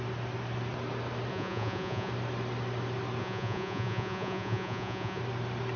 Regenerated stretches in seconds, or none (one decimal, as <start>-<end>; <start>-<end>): 1.3-2.1; 3.2-5.2

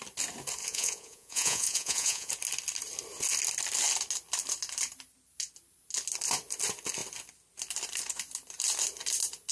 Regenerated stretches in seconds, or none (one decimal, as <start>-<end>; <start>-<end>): 0.6-2.3